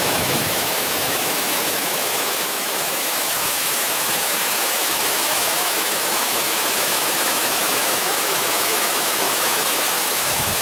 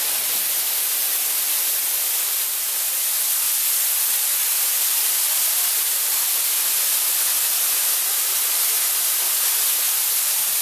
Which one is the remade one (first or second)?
first